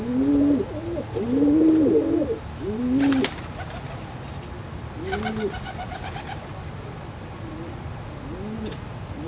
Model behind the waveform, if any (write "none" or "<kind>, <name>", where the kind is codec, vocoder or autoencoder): none